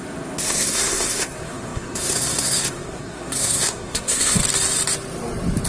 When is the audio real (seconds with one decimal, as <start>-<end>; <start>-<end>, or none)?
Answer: 4.4-5.7